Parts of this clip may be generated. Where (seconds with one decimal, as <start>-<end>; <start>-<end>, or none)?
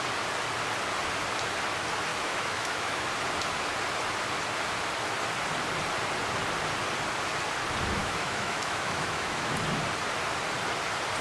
2.1-3.1; 8.0-9.5